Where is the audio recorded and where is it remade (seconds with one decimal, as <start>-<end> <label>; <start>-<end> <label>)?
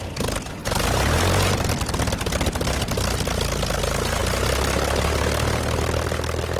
0.0-6.6 recorded